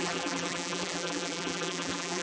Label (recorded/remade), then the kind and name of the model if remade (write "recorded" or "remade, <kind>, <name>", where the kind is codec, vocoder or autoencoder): remade, vocoder, BigVGAN v2